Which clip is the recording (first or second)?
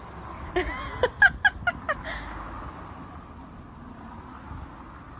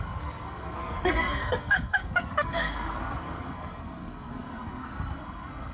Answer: first